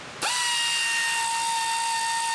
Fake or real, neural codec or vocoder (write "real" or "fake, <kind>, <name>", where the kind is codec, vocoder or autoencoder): real